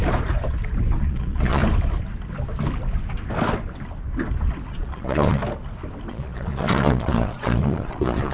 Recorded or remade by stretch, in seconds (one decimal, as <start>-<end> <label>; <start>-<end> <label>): 0.0-1.0 recorded; 1.0-1.6 remade; 1.6-4.7 recorded; 4.7-5.4 remade; 5.4-6.1 recorded; 6.1-8.3 remade